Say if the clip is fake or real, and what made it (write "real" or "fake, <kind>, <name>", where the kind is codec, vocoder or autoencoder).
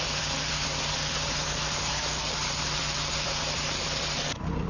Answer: real